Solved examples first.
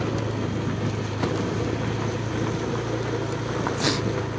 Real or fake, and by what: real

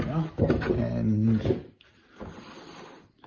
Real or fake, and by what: real